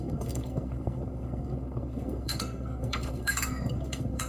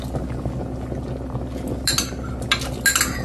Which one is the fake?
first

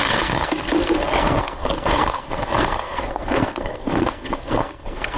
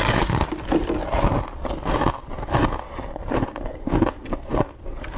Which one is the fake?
first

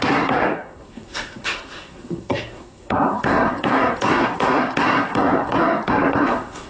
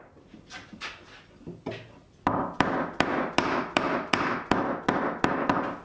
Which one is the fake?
first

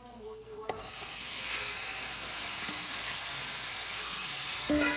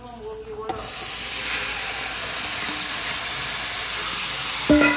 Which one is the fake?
first